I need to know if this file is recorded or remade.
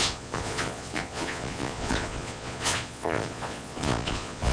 remade